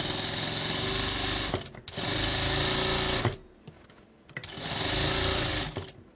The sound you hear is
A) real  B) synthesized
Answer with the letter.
A